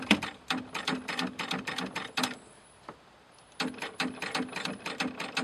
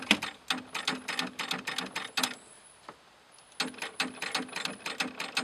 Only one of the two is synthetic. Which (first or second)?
first